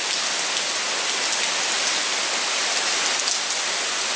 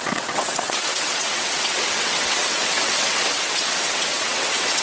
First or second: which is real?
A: first